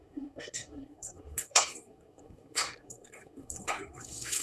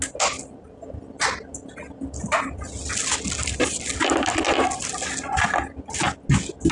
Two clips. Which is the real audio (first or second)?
second